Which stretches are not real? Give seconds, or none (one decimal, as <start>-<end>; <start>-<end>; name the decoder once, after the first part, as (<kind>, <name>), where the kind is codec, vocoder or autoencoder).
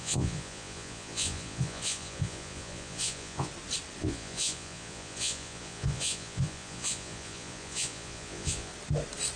0.0-3.5 (vocoder, Vocos); 4.0-8.7